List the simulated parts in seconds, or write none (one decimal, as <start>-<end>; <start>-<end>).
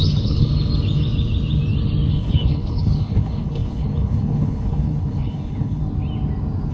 0.0-0.5; 2.1-5.8